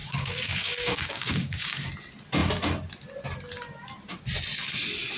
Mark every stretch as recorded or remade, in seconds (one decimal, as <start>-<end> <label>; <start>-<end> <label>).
0.0-1.9 remade; 1.9-5.2 recorded